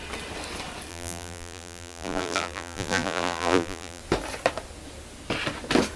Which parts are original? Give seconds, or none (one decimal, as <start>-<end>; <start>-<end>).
0.0-0.9; 4.0-6.0